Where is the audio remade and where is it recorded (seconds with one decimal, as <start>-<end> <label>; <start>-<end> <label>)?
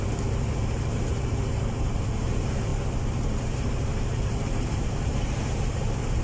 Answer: 0.0-2.7 remade; 2.7-3.4 recorded; 3.4-6.2 remade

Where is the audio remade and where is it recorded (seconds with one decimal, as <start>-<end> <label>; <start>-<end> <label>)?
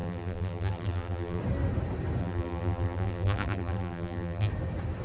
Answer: 0.0-1.4 remade; 1.4-2.2 recorded; 2.2-4.5 remade; 4.5-5.0 recorded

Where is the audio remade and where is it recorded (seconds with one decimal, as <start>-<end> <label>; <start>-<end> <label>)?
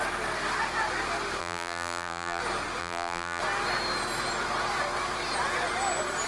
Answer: 0.0-1.4 recorded; 1.4-2.4 remade; 2.4-2.8 recorded; 2.8-3.4 remade; 3.4-6.3 recorded